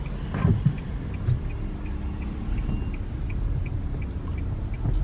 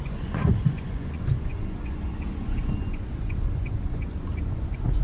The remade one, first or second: second